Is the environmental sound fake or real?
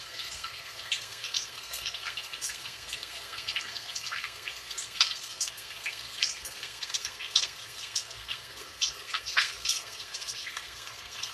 fake